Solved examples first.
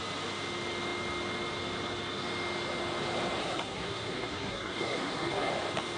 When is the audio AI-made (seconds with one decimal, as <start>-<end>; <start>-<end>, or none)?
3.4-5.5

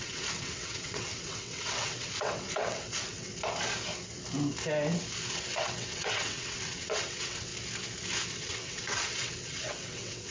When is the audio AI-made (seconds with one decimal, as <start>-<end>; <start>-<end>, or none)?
0.0-3.3; 5.3-7.5; 8.4-10.3

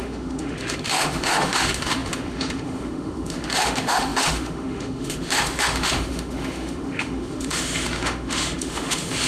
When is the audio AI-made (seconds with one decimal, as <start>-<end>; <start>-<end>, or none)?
0.0-9.3

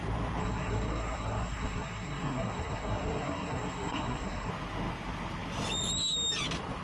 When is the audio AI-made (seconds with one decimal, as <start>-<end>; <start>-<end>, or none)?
0.4-4.5